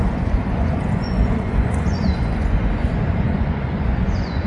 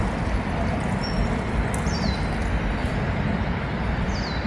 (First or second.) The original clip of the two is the second